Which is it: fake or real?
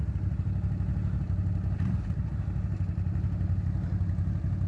real